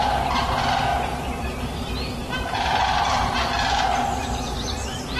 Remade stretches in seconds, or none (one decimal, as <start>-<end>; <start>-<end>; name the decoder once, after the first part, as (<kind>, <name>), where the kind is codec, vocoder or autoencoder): 0.0-5.2 (vocoder, BigVGAN v2)